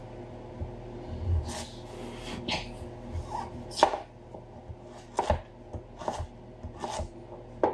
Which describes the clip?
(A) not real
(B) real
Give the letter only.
B